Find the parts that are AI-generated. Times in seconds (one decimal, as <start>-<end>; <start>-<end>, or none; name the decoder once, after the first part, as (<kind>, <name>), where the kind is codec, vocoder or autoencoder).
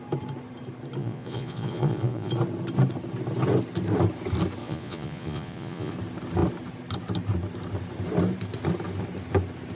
1.0-2.3 (vocoder, Vocos); 4.6-5.9